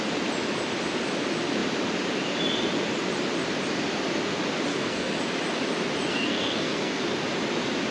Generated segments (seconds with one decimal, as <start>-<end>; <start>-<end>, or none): 4.7-5.2; 6.1-7.0